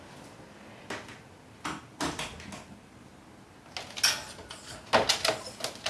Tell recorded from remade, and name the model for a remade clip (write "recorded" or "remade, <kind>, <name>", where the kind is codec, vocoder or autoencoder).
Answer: recorded